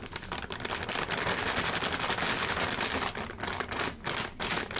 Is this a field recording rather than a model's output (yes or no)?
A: yes